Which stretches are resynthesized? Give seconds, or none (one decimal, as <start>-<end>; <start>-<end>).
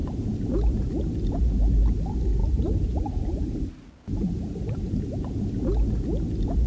0.0-1.0; 2.4-5.4